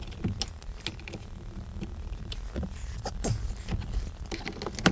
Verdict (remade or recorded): recorded